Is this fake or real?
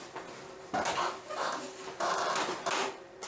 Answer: real